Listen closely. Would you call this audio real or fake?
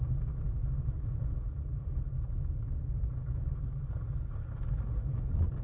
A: real